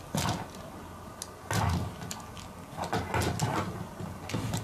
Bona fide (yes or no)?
yes